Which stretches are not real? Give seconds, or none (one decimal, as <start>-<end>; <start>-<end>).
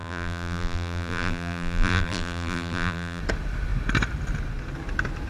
0.0-3.2